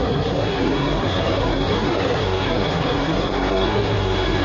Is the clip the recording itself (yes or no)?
no